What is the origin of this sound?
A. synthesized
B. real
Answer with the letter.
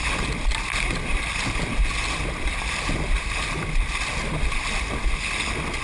B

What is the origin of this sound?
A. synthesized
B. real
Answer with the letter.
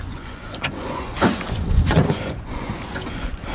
A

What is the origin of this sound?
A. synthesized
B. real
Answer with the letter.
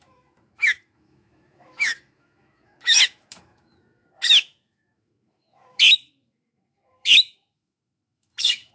A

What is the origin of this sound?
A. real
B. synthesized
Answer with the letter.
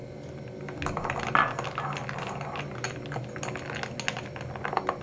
A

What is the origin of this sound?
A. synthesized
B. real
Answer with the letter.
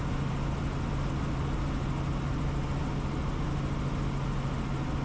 B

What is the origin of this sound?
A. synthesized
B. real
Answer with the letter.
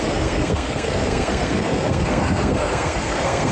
A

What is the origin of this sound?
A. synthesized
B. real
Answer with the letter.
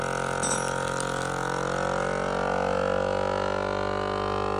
B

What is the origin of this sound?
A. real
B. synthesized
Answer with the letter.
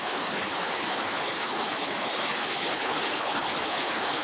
B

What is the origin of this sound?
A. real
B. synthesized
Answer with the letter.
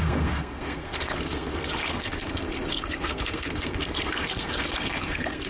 B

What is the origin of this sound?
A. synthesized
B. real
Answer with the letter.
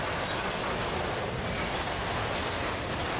B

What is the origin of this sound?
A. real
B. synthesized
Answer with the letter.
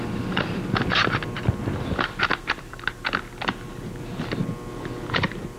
A